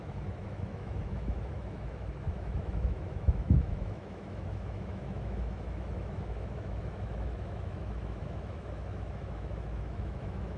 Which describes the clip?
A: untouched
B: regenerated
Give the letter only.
B